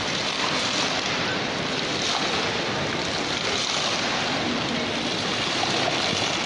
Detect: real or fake real